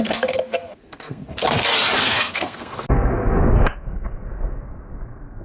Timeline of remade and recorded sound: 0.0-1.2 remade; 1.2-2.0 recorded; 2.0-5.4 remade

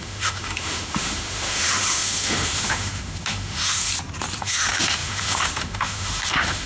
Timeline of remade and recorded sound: 0.0-3.9 remade; 3.9-4.4 recorded; 4.4-6.7 remade

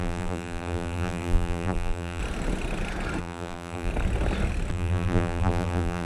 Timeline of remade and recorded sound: 0.0-2.2 remade; 2.2-3.2 recorded; 3.2-3.9 remade; 3.9-4.7 recorded; 4.7-6.1 remade

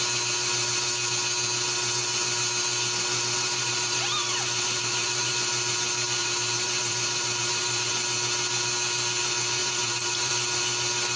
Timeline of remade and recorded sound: 0.0-3.1 recorded; 3.1-5.3 remade; 5.3-6.2 recorded; 6.2-7.9 remade; 7.9-9.6 recorded; 9.6-10.3 remade; 10.3-11.2 recorded